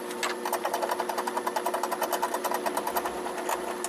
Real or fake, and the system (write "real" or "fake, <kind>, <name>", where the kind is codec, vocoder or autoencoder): real